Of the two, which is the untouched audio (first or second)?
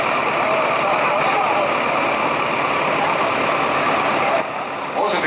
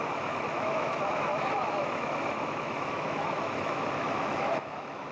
first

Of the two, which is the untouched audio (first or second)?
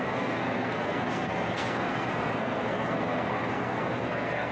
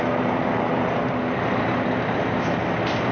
second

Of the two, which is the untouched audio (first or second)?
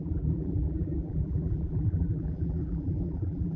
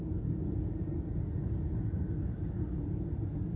second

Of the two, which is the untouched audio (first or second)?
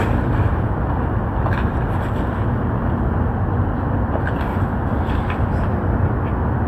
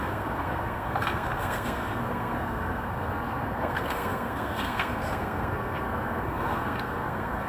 first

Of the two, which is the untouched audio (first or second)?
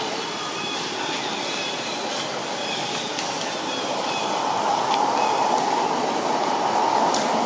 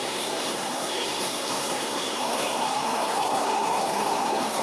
first